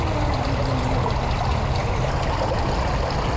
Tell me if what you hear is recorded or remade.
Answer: recorded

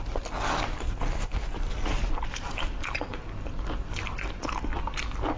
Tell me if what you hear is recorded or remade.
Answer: recorded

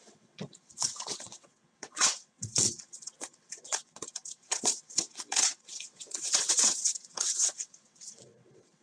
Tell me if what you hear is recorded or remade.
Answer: remade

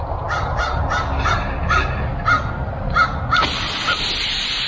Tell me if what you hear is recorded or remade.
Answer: recorded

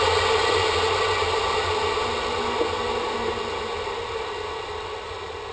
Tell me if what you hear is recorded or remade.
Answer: recorded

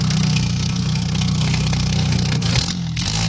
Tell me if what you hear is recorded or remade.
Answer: remade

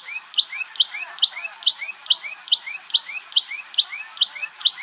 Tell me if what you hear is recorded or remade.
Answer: recorded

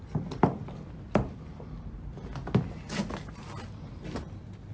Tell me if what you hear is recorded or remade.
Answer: recorded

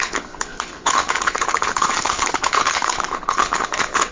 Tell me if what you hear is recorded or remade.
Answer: remade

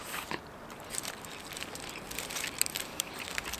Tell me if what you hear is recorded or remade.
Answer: remade